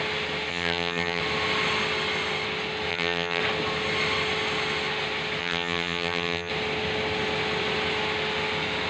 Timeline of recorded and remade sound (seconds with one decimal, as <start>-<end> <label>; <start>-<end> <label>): 0.0-0.5 recorded; 0.5-1.2 remade; 1.2-2.9 recorded; 2.9-3.4 remade; 3.4-5.4 recorded; 5.4-6.5 remade; 6.5-8.9 recorded